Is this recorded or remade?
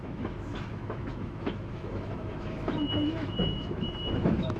remade